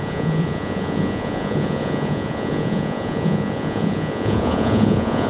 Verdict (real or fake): fake